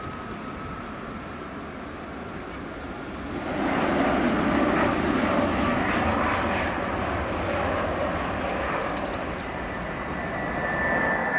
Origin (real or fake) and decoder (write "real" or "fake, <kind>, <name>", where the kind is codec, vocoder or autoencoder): real